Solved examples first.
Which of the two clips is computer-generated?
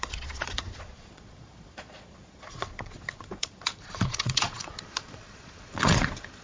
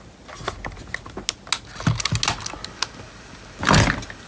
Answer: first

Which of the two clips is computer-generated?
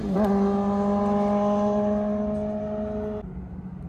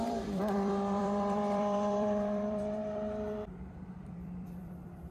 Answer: second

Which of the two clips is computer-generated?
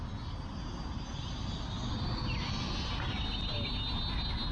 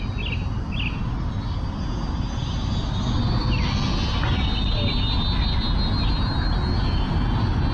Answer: first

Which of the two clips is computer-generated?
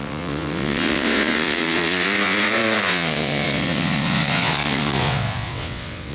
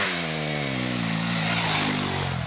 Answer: first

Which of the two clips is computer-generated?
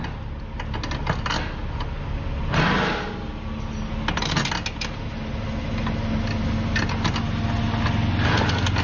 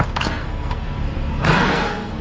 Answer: second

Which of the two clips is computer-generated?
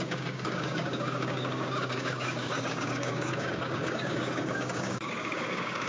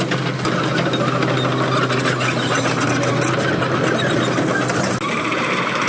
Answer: first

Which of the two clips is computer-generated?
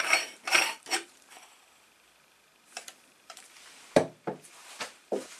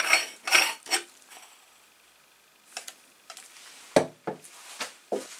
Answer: first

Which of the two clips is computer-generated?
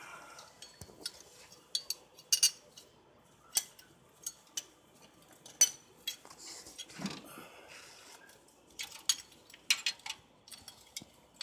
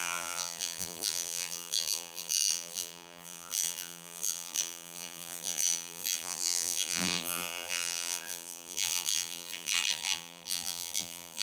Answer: second